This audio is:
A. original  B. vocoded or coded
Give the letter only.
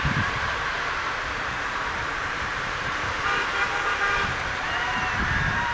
B